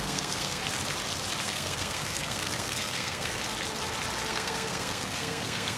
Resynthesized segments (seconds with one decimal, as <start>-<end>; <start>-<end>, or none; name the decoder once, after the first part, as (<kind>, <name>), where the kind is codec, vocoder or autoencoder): 0.0-0.6 (codec, SNAC); 1.4-3.4; 4.3-5.8